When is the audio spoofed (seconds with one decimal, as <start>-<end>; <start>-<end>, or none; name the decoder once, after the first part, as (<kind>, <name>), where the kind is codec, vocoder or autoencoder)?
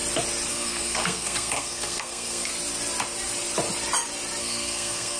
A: 0.5-2.5 (codec, SNAC); 4.4-5.2